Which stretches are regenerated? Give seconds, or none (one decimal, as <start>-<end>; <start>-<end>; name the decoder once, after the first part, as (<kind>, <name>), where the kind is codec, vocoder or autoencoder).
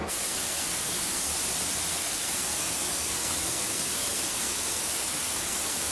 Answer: 0.0-1.3 (codec, SNAC); 1.9-5.9